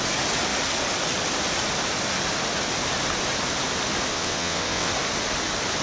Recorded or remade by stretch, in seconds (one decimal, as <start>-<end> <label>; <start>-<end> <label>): 0.0-4.1 recorded; 4.1-4.9 remade; 4.9-5.8 recorded